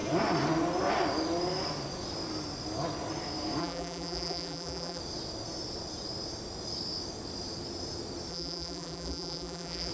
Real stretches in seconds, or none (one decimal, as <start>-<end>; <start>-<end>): 0.0-3.6; 5.0-8.3